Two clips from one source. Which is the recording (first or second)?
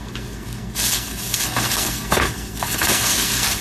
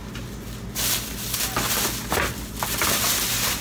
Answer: second